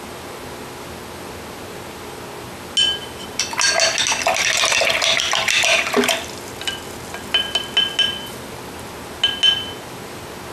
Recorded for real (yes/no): yes